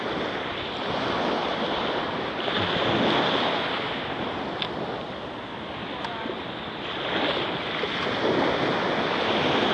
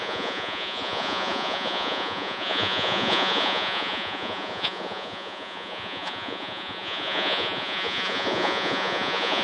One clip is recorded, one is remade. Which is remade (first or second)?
second